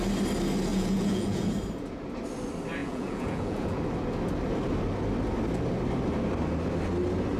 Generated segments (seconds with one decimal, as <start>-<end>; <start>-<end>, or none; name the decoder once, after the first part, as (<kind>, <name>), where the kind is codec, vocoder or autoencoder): 0.7-1.5 (vocoder, Vocos); 2.8-3.8